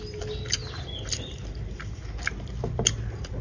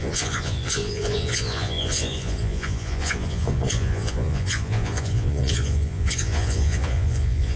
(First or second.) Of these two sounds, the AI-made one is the second